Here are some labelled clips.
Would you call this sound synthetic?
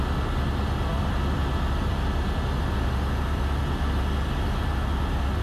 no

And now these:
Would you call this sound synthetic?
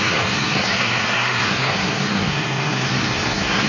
yes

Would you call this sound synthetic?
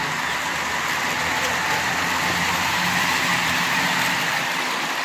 no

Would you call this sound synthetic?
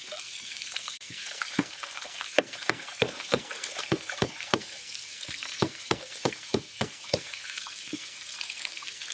yes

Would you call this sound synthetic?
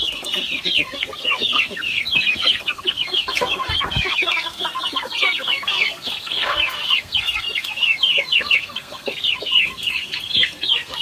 yes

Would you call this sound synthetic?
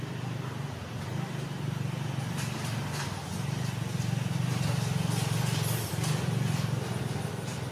no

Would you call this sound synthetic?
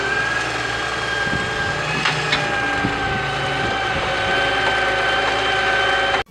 no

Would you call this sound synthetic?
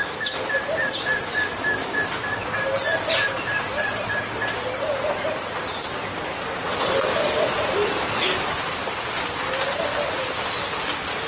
no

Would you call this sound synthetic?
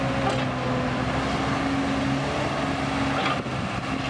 no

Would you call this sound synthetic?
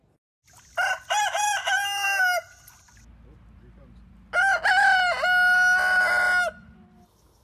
no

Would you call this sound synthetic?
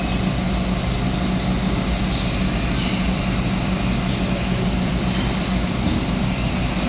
no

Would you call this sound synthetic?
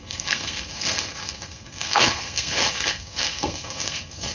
yes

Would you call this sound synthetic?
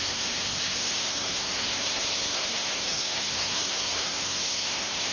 yes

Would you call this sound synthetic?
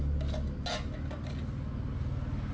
no